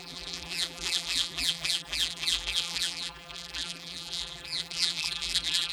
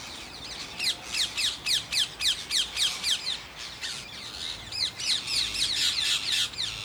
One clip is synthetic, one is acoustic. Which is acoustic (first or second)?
second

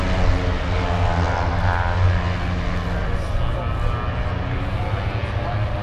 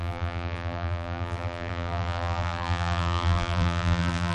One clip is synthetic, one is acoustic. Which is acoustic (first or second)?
first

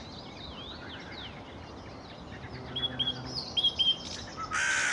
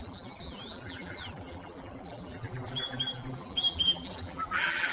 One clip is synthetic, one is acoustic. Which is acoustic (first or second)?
first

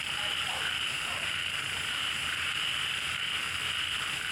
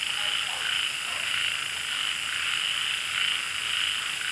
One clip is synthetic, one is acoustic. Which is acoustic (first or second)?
second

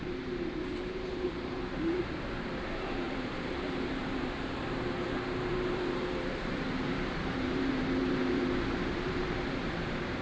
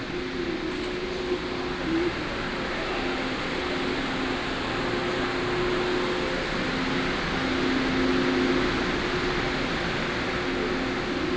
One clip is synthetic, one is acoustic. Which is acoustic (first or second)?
second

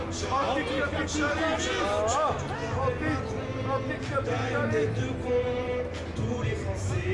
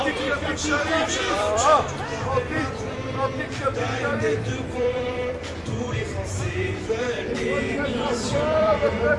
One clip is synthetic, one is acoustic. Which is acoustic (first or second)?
first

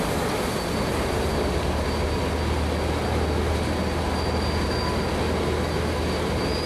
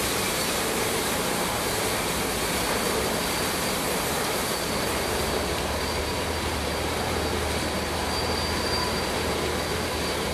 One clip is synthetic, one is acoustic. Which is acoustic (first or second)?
first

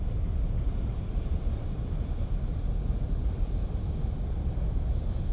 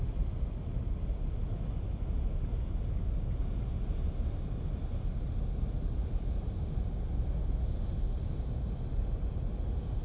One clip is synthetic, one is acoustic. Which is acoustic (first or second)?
second